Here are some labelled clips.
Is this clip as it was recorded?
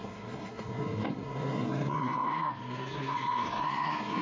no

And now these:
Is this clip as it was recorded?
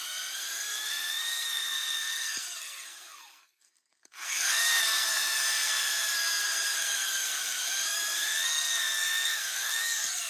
no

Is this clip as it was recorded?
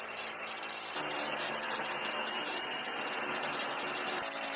yes